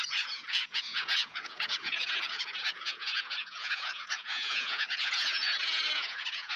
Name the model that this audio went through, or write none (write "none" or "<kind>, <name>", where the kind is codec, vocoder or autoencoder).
vocoder, Vocos